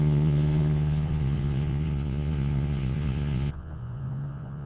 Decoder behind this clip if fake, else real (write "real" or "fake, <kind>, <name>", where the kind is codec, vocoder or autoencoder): fake, vocoder, Vocos